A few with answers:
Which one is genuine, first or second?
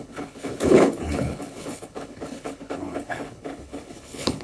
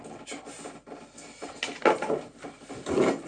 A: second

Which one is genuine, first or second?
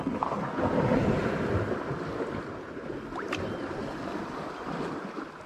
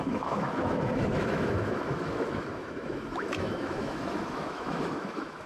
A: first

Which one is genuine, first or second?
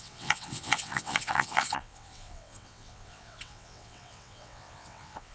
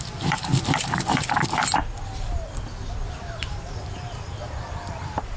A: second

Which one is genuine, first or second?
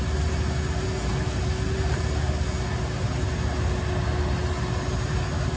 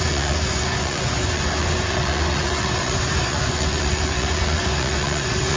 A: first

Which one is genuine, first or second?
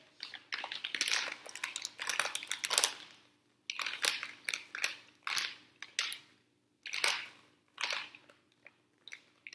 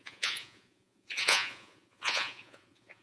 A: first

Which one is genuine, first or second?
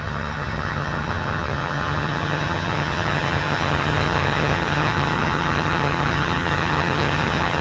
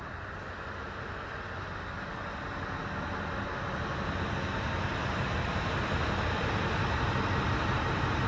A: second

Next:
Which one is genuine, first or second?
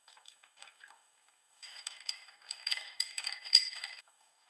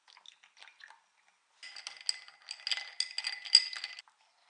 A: second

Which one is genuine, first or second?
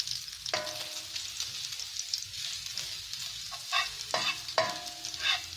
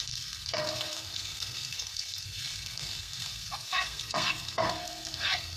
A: first